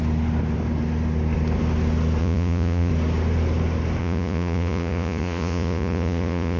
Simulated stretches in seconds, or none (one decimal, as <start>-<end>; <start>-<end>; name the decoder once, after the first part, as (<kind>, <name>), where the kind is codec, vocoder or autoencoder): 2.2-2.9 (vocoder, Vocos); 4.0-6.6